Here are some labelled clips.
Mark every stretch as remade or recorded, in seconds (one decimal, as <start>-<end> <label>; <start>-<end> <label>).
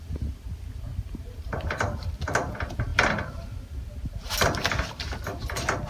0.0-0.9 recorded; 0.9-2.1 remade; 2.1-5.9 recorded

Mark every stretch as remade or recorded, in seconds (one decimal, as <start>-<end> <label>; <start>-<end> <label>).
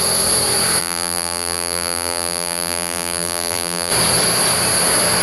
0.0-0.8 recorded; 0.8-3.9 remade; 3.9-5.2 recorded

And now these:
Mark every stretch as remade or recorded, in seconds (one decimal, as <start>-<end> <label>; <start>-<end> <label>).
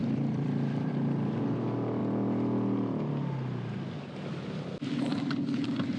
0.0-0.9 remade; 0.9-6.0 recorded